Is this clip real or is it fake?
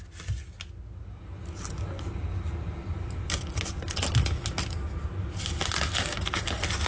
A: real